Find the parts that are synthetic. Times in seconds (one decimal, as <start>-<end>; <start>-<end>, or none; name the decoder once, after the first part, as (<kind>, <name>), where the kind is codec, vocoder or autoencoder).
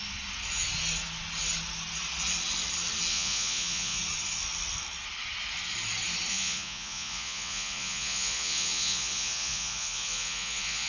3.1-4.0 (vocoder, Vocos); 6.3-10.9